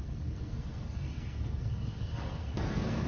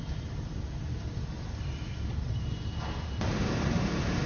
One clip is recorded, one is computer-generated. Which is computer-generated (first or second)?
first